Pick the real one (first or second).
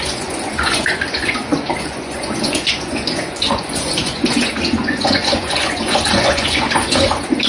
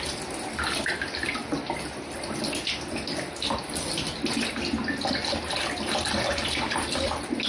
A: second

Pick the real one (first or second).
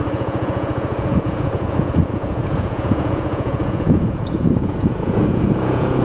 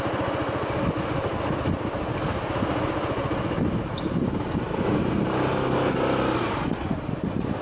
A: second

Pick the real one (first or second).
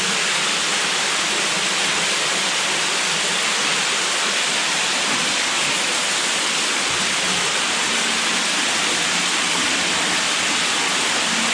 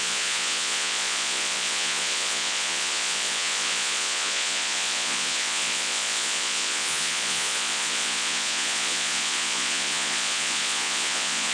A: first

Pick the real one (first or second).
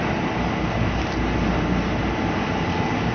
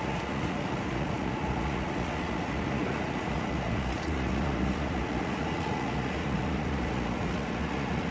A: first